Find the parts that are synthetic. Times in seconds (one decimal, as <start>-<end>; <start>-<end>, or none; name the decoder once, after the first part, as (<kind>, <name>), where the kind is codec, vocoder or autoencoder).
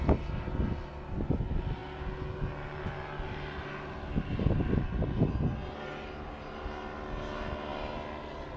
none